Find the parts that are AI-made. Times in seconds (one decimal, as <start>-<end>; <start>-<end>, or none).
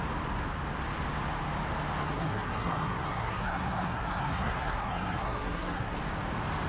2.0-6.0